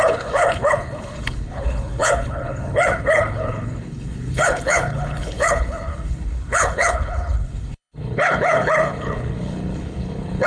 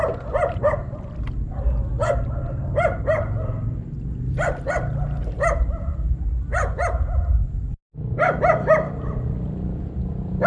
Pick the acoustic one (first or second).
second